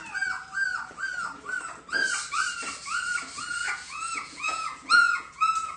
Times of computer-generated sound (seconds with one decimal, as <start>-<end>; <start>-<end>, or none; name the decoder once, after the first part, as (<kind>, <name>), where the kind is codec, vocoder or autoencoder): 3.6-5.8 (vocoder, Vocos)